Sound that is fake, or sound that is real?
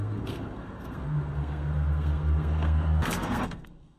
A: fake